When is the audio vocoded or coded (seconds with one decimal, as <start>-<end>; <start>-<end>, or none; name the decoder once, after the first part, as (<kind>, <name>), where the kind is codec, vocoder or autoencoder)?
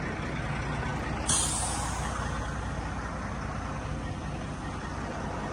none